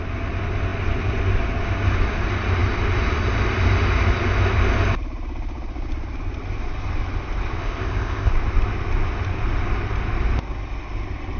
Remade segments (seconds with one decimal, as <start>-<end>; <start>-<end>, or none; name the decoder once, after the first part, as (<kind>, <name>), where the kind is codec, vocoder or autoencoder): 7.6-8.3 (codec, ZipCodec)